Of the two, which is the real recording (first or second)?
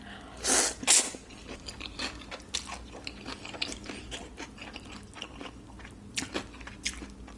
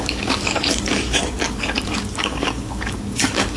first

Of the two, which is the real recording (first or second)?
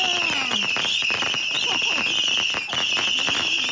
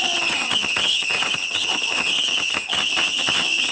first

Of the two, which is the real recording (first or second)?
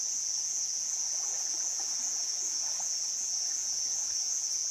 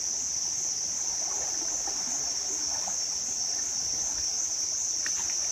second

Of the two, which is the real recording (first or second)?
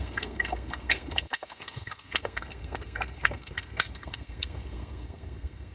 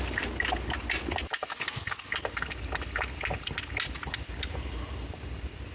second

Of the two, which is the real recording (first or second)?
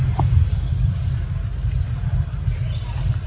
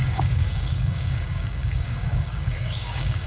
first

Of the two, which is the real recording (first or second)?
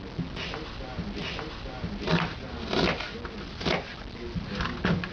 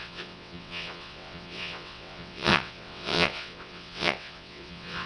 first